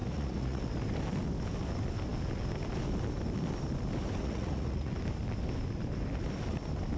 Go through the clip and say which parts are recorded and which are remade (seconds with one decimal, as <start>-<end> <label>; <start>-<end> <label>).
0.0-0.6 remade; 0.6-4.2 recorded; 4.2-4.9 remade; 4.9-7.0 recorded